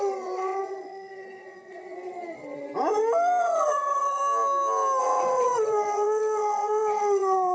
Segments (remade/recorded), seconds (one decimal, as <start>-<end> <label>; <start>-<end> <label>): 0.0-2.7 remade; 2.7-3.4 recorded; 3.4-4.2 remade; 4.2-5.0 recorded; 5.0-7.5 remade